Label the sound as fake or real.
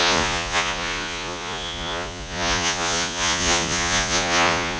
fake